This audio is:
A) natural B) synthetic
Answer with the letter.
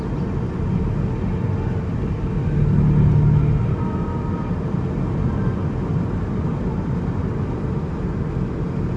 A